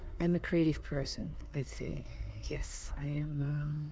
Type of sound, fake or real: fake